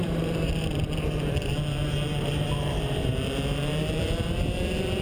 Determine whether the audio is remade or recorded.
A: remade